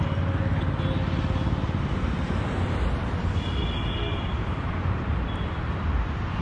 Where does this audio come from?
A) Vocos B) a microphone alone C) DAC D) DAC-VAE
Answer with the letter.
B